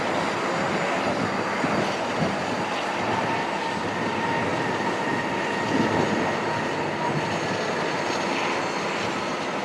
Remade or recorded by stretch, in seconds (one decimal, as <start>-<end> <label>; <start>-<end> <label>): 0.0-9.6 recorded